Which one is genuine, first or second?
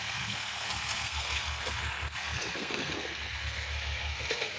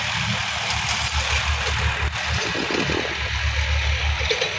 second